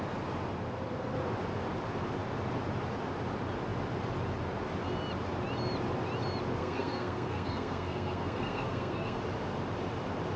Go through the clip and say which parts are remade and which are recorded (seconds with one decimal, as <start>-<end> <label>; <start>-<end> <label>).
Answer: 0.0-6.6 recorded; 6.6-9.2 remade; 9.2-10.4 recorded